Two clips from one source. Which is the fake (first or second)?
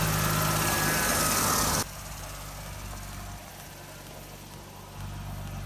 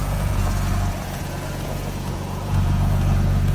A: second